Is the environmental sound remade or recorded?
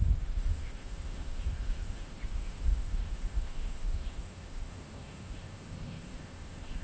remade